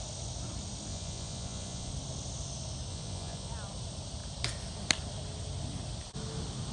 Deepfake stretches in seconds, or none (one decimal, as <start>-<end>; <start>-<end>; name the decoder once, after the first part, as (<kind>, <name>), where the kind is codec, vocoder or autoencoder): 0.9-1.9 (vocoder, Vocos); 2.9-3.5